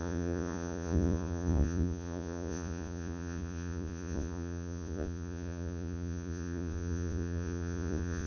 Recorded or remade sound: remade